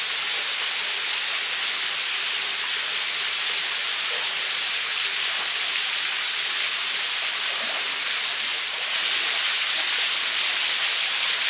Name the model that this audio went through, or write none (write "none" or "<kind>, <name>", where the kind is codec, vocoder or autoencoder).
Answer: none